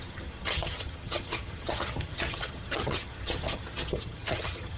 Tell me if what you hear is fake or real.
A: fake